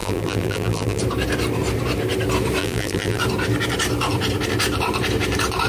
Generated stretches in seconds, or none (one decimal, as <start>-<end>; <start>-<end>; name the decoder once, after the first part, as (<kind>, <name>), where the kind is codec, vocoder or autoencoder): 0.0-1.0 (vocoder, BigVGAN v2); 2.6-3.2